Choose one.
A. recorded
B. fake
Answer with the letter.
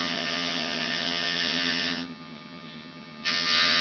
B